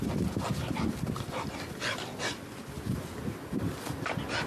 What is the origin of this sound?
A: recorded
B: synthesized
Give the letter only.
A